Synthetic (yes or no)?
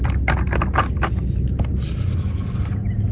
no